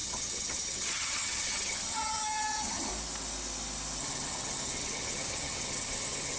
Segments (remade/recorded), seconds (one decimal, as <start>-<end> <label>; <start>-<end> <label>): 0.0-2.9 remade; 2.9-4.0 recorded; 4.0-6.4 remade